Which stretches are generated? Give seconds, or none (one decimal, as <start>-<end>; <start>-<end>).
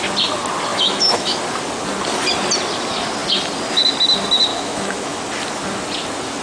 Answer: 0.7-1.4; 4.5-5.2